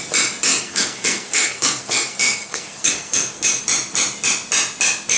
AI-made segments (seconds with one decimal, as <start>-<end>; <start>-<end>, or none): 0.5-3.6